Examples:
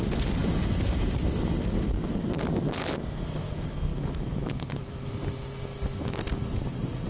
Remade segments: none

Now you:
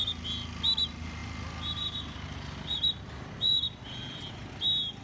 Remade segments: none

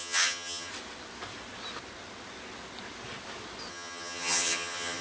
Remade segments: 0.0-0.7; 3.7-5.0